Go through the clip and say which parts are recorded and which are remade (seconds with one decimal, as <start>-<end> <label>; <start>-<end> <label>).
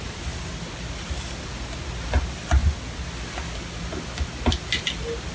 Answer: 0.0-5.3 recorded